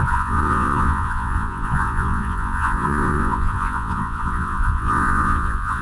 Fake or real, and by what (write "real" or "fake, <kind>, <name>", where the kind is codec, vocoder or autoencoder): fake, vocoder, Vocos